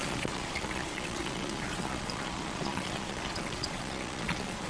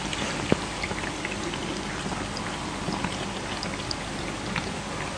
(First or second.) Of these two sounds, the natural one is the second